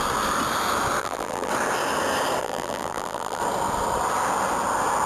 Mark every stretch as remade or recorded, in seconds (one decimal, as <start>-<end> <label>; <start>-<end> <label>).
0.0-1.0 recorded; 1.0-1.5 remade; 1.5-2.4 recorded; 2.4-3.4 remade; 3.4-5.1 recorded